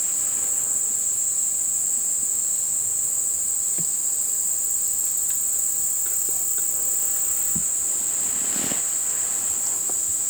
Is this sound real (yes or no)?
yes